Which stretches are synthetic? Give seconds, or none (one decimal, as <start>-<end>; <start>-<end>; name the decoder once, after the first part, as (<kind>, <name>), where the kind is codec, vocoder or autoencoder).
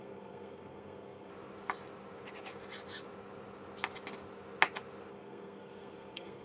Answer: 0.0-1.3 (codec, SNAC); 5.1-6.4